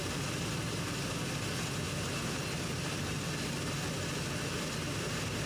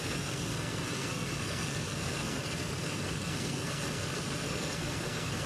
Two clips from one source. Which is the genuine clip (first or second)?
first